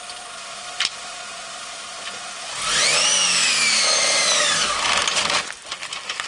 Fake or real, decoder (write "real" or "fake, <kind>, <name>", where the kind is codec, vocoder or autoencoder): real